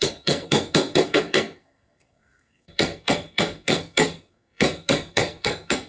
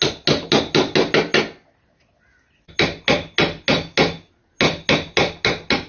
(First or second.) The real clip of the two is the second